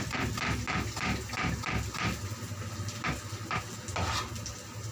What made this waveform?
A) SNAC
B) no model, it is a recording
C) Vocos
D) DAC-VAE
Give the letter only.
B